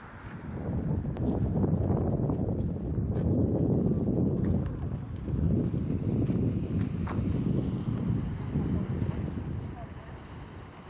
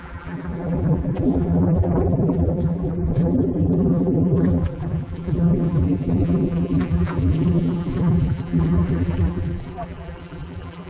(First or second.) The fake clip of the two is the second